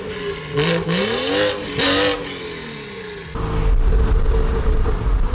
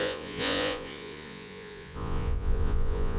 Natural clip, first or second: first